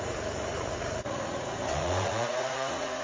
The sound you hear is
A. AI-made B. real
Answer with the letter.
A